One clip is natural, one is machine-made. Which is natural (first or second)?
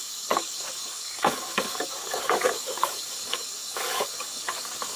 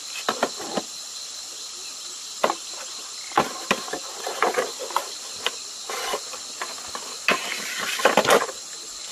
second